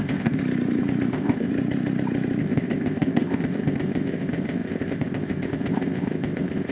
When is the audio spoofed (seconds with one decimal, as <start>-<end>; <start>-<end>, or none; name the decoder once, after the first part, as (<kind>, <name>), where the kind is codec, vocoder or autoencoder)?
0.0-0.4 (codec, ZipCodec); 1.1-1.5; 2.4-6.7